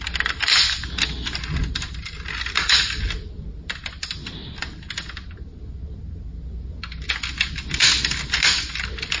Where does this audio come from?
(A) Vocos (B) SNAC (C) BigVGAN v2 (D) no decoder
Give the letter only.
D